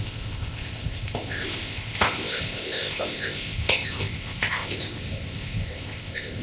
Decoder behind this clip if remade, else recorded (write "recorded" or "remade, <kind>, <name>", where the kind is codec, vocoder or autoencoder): remade, codec, ZipCodec